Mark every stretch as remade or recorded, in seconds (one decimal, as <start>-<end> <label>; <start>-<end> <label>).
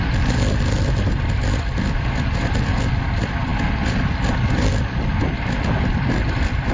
0.0-6.7 recorded